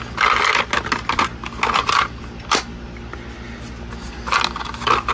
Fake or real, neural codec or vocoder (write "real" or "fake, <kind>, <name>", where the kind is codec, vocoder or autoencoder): real